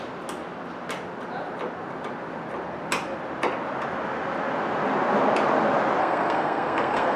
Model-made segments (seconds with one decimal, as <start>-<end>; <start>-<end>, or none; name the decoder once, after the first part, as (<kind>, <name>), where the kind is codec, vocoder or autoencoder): 6.0-7.2 (codec, SNAC)